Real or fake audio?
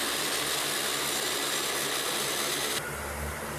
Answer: real